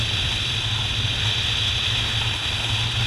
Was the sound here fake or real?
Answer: real